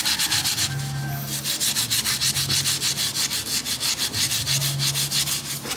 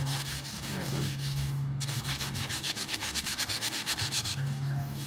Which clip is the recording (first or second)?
first